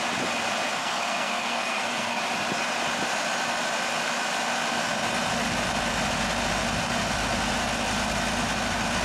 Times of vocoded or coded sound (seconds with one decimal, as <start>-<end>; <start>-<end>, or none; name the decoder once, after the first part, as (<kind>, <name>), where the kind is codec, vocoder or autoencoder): 0.8-2.2 (codec, SNAC)